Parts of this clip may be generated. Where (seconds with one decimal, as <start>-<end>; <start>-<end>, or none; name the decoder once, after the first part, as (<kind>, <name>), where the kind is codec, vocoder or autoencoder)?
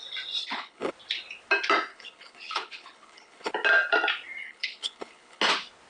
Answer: 0.4-0.9 (codec, HILCodec); 1.9-3.5; 4.4-5.4